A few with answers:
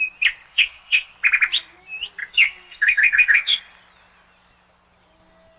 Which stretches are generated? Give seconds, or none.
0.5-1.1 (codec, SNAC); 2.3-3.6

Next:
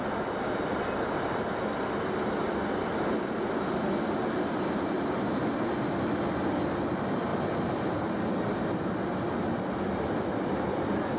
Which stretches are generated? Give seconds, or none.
none